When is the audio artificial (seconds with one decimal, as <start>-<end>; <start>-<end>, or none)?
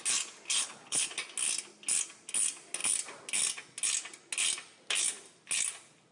0.6-1.1